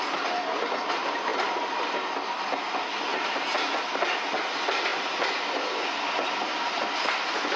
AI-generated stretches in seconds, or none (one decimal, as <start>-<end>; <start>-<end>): 3.1-3.8; 4.9-5.4